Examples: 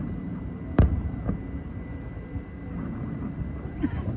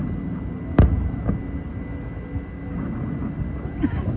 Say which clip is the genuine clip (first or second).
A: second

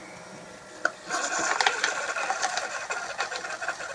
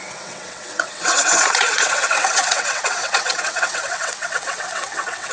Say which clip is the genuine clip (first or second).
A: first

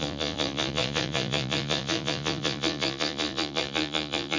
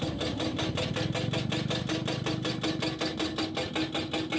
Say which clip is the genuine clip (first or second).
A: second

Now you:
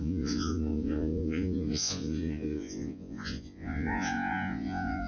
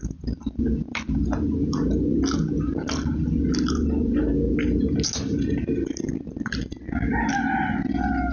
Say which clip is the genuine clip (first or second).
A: second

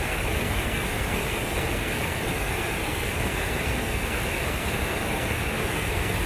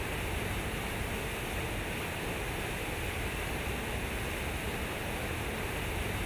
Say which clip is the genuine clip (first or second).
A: second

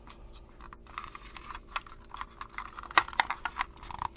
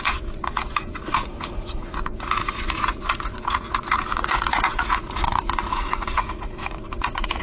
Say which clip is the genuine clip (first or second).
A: first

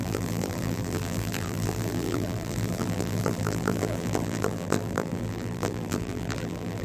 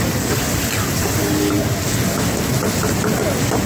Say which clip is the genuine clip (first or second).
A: second